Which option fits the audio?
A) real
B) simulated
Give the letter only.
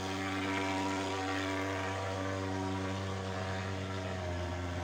A